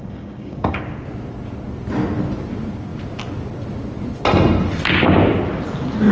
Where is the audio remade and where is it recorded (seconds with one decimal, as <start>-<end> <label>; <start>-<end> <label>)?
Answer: 0.0-0.8 remade; 0.8-6.1 recorded